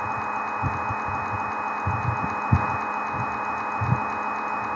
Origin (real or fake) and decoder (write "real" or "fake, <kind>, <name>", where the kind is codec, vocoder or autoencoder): real